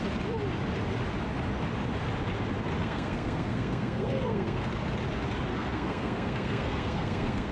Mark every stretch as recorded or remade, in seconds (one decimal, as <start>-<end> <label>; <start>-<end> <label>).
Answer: 0.0-2.8 recorded; 2.8-4.7 remade; 4.7-5.5 recorded; 5.5-7.5 remade